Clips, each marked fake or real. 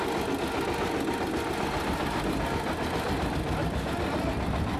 real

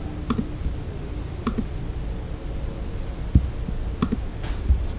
real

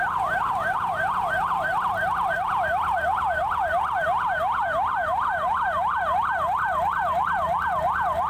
fake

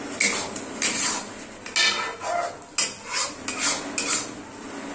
real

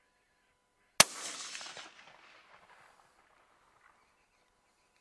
real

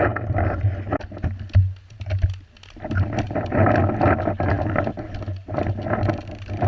real